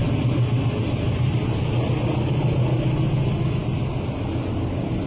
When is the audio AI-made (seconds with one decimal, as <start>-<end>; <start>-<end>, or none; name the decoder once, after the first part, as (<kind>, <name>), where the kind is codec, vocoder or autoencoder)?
none